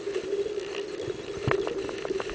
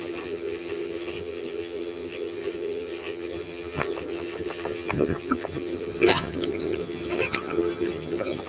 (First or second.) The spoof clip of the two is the second